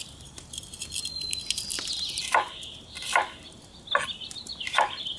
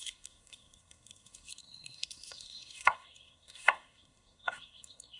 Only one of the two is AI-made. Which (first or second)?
second